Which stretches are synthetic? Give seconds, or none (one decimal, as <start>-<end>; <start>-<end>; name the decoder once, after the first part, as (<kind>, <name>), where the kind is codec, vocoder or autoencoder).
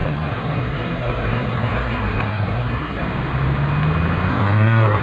0.0-3.0 (codec, SNAC); 4.3-5.0